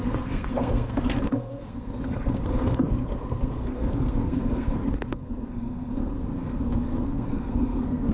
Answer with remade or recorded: remade